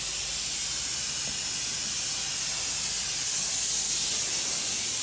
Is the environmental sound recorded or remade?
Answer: recorded